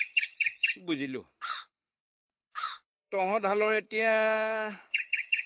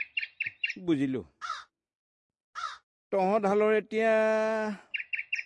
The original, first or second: second